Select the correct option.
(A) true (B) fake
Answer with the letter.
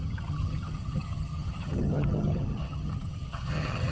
B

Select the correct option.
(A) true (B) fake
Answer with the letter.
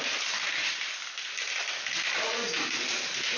A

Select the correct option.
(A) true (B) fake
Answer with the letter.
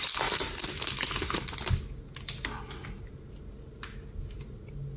A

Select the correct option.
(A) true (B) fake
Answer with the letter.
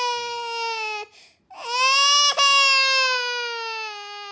A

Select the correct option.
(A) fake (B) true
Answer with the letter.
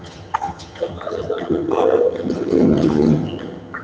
A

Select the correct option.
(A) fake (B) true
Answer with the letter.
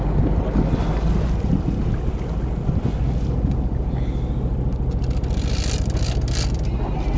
B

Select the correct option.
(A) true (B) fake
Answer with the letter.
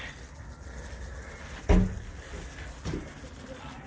A